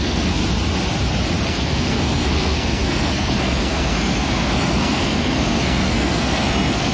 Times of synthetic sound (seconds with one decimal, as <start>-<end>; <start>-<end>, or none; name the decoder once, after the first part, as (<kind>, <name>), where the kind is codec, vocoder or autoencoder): 0.0-0.4 (codec, SNAC); 1.5-6.9